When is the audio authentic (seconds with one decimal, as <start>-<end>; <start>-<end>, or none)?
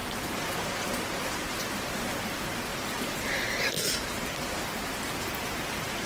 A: 2.2-2.7; 3.3-6.1